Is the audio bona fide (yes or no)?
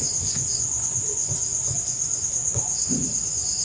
no